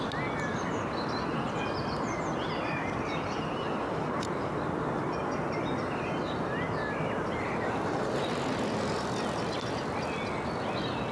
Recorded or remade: recorded